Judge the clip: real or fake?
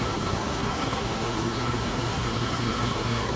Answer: fake